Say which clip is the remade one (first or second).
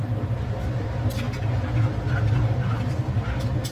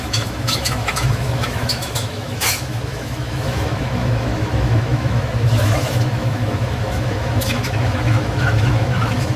second